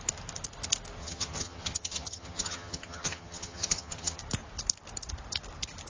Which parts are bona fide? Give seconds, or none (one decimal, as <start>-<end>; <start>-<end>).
0.0-1.0; 4.2-5.9